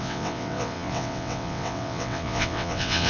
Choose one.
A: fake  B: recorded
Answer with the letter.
A